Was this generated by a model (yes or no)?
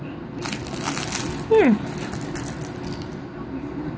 no